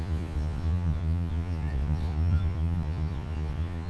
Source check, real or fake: fake